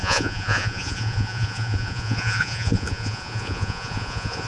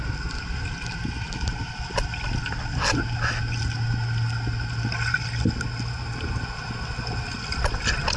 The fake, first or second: first